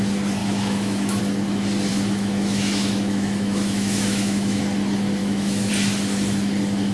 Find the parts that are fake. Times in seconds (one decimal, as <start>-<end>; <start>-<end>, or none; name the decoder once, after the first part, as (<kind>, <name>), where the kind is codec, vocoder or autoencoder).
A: 0.4-1.2 (autoencoder, DAC-VAE); 1.9-4.6; 5.2-5.7